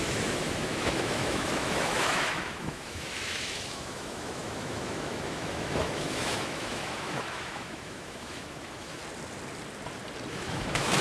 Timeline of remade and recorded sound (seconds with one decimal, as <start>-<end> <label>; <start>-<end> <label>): 0.0-9.0 remade; 9.0-10.3 recorded; 10.3-11.0 remade